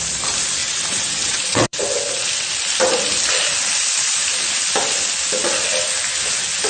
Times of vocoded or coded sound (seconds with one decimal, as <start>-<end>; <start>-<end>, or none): 0.6-1.8